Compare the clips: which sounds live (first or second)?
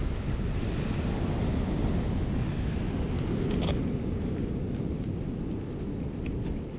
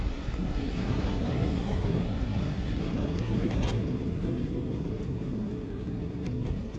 first